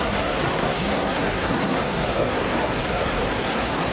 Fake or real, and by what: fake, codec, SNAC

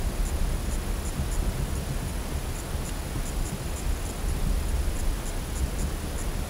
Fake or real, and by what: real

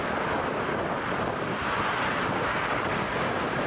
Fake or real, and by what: real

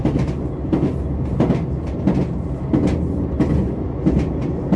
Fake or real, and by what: real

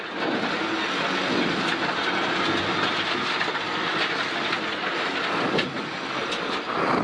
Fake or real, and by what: real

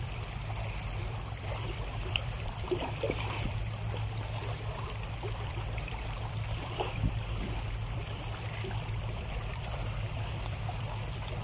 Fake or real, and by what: fake, vocoder, BigVGAN v2